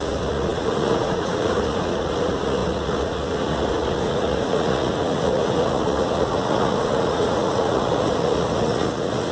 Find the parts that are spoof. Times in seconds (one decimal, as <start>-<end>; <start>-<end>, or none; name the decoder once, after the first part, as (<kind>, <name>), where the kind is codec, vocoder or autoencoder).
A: 0.0-9.3 (vocoder, Vocos)